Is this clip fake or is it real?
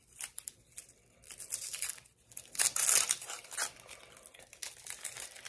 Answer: fake